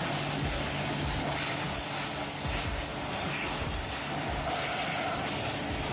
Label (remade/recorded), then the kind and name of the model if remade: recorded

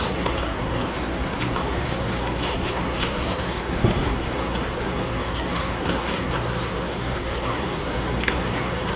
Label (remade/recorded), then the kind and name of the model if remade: remade, codec, SNAC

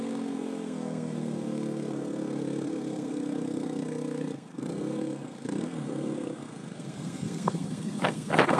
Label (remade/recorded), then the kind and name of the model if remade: remade, codec, SNAC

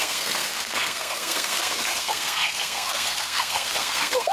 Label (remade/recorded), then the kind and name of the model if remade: remade, codec, SNAC